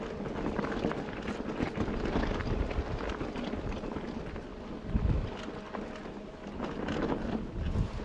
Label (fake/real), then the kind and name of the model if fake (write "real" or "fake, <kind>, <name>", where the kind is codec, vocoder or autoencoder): real